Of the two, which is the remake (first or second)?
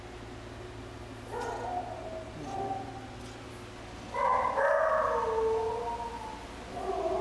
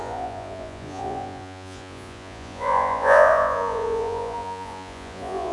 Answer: second